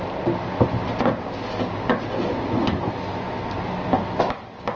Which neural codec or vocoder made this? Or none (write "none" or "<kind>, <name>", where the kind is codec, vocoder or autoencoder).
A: none